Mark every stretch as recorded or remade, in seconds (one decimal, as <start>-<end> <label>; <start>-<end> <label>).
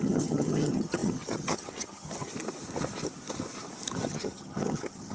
0.0-2.3 remade; 2.3-4.0 recorded; 4.0-5.1 remade